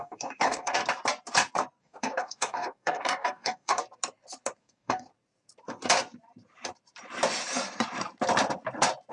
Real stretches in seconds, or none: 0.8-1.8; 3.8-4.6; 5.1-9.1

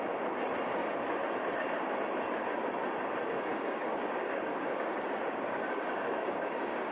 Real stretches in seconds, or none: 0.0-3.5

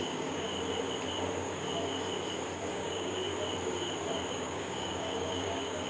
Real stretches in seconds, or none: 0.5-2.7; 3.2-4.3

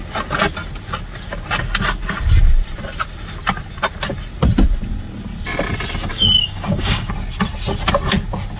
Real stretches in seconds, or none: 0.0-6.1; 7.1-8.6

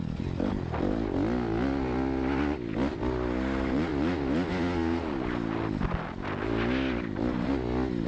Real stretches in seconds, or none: 0.0-8.1